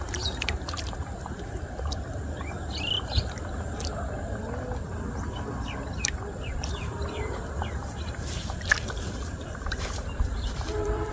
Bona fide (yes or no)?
no